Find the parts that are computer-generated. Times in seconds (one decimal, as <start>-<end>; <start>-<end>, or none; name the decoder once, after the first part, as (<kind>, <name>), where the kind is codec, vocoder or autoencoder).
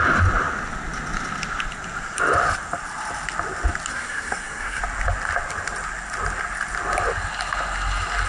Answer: 3.9-4.8 (codec, SNAC)